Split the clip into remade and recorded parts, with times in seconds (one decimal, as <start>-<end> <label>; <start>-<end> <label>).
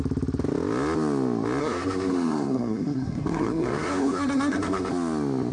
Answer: 0.0-1.6 recorded; 1.6-4.9 remade; 4.9-5.5 recorded